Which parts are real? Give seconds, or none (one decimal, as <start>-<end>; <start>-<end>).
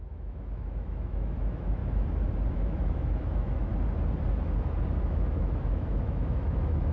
1.8-2.5; 3.7-5.0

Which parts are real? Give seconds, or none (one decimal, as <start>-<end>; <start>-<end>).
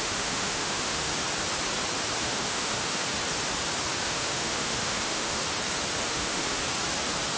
1.1-2.2; 3.0-4.0; 5.4-6.1; 6.6-7.4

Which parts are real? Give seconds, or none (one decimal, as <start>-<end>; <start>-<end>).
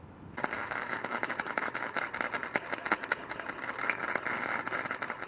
0.0-0.6; 2.0-5.3